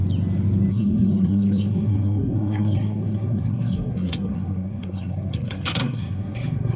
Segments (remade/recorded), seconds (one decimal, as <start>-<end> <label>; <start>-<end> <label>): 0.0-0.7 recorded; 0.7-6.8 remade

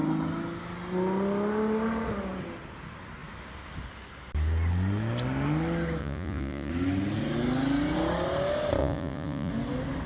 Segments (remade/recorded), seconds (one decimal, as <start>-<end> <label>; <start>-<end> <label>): 0.0-6.0 recorded; 6.0-6.7 remade; 6.7-8.8 recorded; 8.8-9.5 remade; 9.5-10.1 recorded

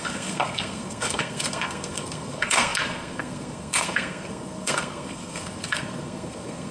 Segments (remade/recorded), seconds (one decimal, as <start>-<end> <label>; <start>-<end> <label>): 0.0-6.7 remade

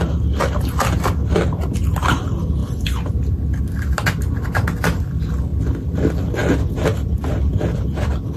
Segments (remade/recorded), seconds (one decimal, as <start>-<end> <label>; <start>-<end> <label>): 0.0-8.4 recorded

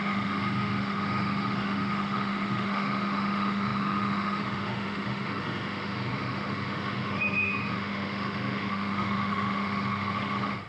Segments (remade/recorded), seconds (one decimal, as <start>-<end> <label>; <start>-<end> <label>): 0.0-10.7 remade

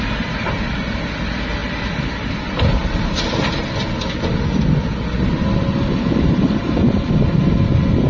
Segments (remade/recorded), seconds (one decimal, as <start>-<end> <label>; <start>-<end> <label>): 0.0-8.1 recorded

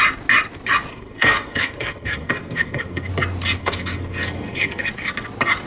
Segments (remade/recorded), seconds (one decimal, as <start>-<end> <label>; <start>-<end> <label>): 0.0-0.9 recorded; 0.9-3.1 remade; 3.1-3.6 recorded; 3.6-4.9 remade; 4.9-5.7 recorded

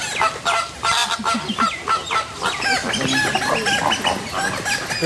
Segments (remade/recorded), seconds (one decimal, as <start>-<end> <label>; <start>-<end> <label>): 0.0-5.1 recorded